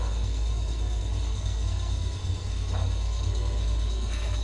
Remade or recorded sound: remade